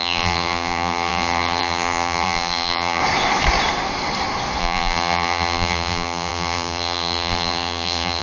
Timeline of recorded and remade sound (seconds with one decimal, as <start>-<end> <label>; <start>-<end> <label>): 0.0-3.0 remade; 3.0-4.6 recorded; 4.6-8.2 remade